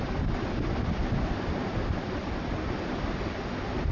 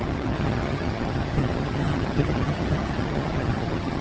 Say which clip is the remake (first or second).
second